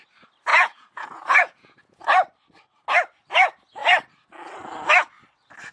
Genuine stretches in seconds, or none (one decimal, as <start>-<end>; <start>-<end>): 0.0-0.5; 2.0-5.7